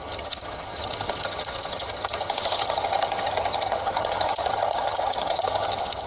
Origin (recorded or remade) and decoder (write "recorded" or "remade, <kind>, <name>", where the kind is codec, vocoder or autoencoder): remade, vocoder, HiFi-GAN